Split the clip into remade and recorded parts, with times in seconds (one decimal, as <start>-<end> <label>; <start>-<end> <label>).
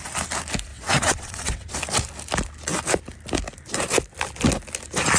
0.0-0.7 recorded; 0.7-1.7 remade; 1.7-5.2 recorded